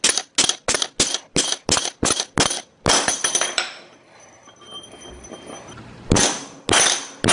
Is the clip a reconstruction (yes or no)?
no